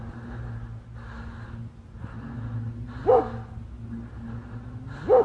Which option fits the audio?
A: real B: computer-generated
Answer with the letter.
A